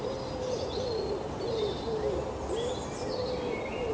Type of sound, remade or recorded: recorded